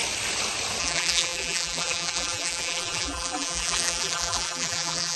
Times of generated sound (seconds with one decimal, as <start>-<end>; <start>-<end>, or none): 0.8-5.2